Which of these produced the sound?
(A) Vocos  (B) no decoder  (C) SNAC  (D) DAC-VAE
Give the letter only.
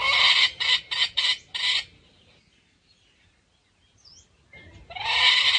B